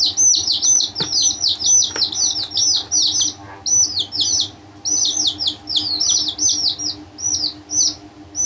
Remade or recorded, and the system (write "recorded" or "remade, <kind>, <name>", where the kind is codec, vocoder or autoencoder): recorded